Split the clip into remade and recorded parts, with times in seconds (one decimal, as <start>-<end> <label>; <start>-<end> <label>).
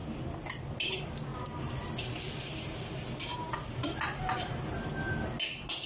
0.0-5.9 recorded